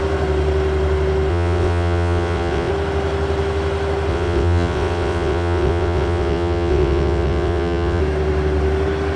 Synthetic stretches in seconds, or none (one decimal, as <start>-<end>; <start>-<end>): 1.3-2.7; 4.1-8.0